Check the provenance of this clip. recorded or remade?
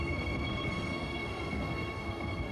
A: remade